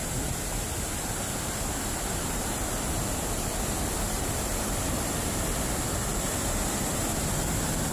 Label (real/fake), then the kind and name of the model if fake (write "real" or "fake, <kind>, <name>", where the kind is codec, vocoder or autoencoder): fake, vocoder, BigVGAN v2